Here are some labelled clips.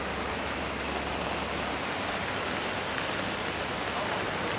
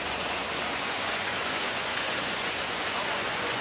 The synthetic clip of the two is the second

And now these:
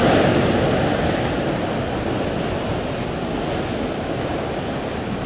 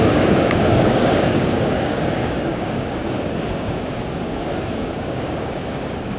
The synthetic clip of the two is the second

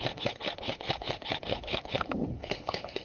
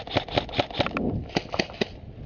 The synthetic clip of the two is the first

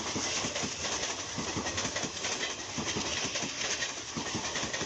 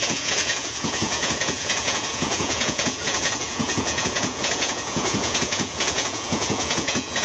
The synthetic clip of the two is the second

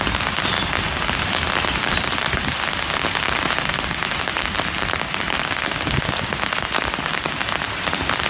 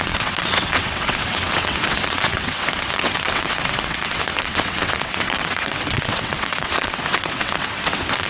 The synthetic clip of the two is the second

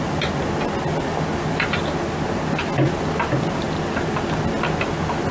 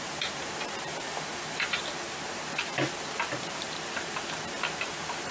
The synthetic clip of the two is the second